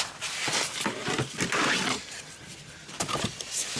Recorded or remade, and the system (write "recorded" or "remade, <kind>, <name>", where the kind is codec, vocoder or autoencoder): recorded